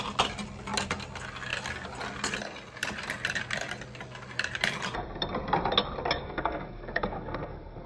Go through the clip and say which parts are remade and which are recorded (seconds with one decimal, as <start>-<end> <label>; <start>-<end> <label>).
0.0-6.2 recorded; 6.2-7.9 remade